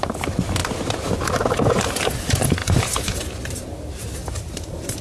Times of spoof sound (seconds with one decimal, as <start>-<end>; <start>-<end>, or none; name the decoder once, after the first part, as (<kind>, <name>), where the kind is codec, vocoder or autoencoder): 2.6-3.2 (vocoder, BigVGAN v2); 4.2-5.0